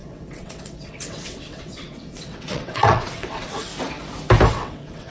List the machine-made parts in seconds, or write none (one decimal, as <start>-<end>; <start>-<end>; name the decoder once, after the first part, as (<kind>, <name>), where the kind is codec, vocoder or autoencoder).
0.0-3.7 (vocoder, WaveNeXt); 4.5-5.1